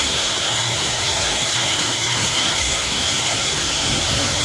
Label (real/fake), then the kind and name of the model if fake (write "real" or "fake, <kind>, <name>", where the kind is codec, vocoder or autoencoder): fake, codec, SNAC